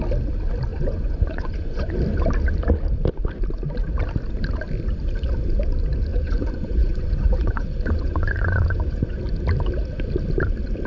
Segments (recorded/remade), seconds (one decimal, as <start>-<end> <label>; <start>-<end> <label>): 0.0-0.7 recorded; 0.7-1.9 remade; 1.9-6.1 recorded; 6.1-9.2 remade; 9.2-10.9 recorded